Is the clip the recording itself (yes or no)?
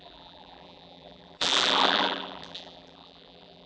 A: no